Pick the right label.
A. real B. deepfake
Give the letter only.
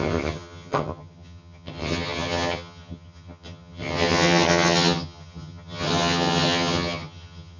B